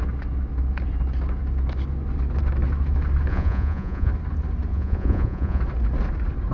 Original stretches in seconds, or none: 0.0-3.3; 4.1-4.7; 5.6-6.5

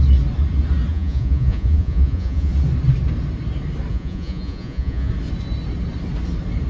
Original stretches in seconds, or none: 0.0-0.9; 2.5-3.9; 5.1-6.7

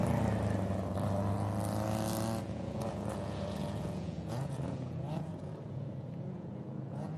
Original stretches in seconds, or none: 0.0-2.4

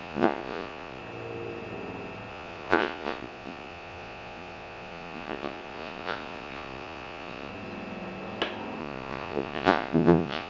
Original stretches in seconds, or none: 1.0-2.3; 7.5-8.8

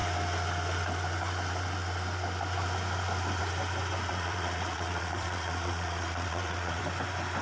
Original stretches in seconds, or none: 0.0-4.1; 6.8-7.4